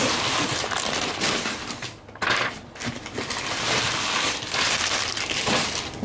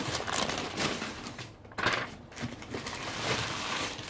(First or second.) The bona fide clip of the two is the first